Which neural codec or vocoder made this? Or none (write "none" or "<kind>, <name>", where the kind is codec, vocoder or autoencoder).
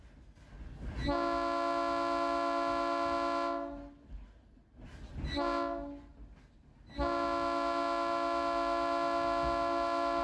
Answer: none